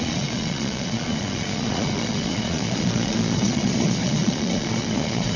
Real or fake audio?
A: fake